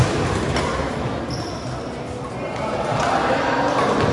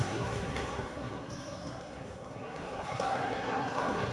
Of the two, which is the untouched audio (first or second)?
first